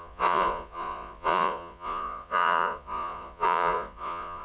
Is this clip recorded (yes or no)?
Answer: no